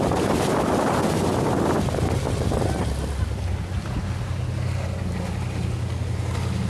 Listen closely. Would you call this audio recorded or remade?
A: recorded